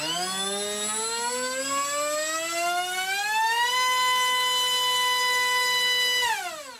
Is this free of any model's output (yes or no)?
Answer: yes